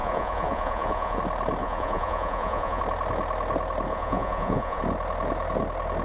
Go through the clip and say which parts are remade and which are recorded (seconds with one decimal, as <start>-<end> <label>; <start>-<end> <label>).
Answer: 0.0-1.2 remade; 1.2-1.6 recorded; 1.6-2.8 remade; 2.8-3.9 recorded; 3.9-4.8 remade; 4.8-6.0 recorded